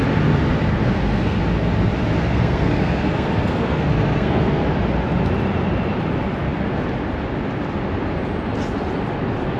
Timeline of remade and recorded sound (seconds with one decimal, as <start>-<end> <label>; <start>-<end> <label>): 0.0-0.7 recorded; 0.7-1.4 remade; 1.4-2.2 recorded; 2.2-4.6 remade; 4.6-9.6 recorded